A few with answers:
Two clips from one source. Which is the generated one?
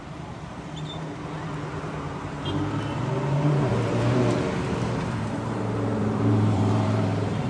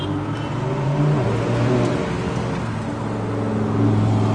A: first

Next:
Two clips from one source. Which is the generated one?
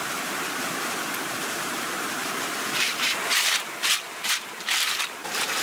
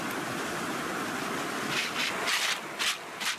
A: first